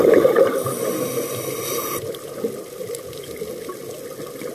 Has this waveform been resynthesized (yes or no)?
no